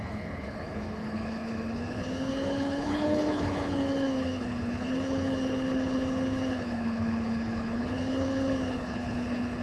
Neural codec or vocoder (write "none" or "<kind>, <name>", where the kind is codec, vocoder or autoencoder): codec, HILCodec